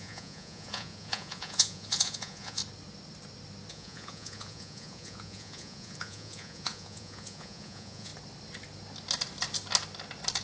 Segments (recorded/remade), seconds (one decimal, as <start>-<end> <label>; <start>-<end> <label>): 0.0-2.6 remade; 2.6-3.7 recorded; 3.7-8.1 remade; 8.1-10.4 recorded